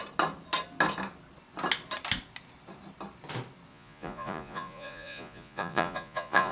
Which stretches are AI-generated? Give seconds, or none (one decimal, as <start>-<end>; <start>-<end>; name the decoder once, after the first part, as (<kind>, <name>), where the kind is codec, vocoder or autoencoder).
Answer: 3.7-6.5 (vocoder, Vocos)